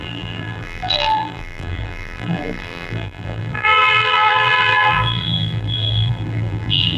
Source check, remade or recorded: remade